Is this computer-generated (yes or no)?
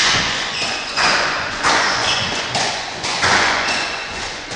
yes